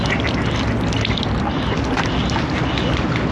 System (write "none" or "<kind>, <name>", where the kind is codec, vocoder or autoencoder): none